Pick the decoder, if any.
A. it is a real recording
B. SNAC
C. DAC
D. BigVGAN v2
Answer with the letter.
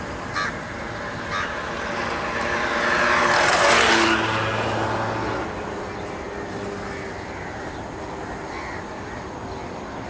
A